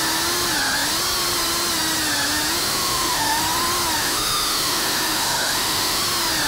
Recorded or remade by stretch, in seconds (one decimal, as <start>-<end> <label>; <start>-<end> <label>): 0.0-2.6 recorded; 2.6-3.4 remade; 3.4-4.0 recorded; 4.0-6.0 remade; 6.0-6.5 recorded